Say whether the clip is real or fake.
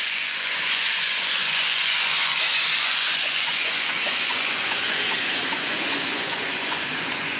fake